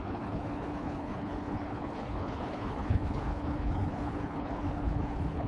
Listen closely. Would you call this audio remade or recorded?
remade